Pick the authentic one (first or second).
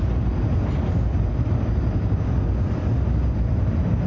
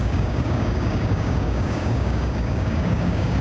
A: first